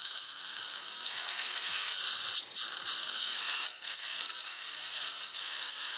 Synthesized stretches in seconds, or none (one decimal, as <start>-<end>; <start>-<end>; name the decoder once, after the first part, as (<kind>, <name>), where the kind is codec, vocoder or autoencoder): 0.0-2.0 (codec, SNAC); 3.0-6.0

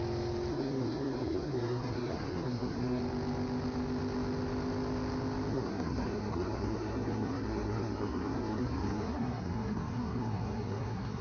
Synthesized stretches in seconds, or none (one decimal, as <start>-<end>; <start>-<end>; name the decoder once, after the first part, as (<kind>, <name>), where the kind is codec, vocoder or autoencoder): 0.5-3.0 (codec, SNAC); 5.5-11.2

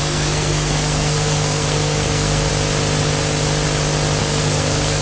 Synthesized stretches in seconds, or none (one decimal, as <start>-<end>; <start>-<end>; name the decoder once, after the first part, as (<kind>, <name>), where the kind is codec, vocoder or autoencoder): 0.0-2.5 (codec, SNAC); 4.2-5.0

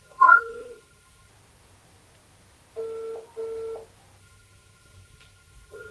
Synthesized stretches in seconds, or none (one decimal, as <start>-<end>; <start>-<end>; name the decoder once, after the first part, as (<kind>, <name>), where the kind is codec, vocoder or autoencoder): 0.0-1.3 (codec, SNAC); 4.2-5.9

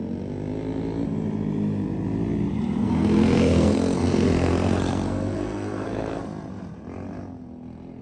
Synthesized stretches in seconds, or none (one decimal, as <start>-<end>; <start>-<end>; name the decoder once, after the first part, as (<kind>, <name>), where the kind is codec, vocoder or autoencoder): 2.8-6.2 (codec, SNAC)